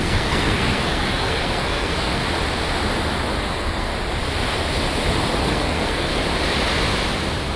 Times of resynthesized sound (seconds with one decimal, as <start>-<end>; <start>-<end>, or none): 0.0-2.2; 3.4-3.9; 5.4-6.1